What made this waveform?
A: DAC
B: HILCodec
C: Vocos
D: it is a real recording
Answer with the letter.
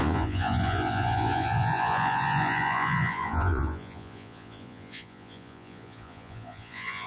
C